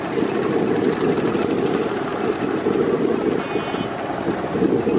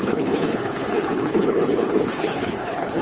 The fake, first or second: second